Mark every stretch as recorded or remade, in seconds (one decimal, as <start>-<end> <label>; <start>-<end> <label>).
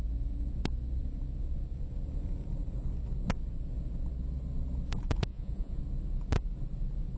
0.0-5.3 recorded; 5.3-5.8 remade; 5.8-7.2 recorded